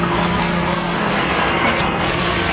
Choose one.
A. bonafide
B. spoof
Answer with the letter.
B